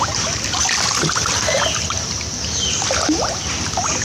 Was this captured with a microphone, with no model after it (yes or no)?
yes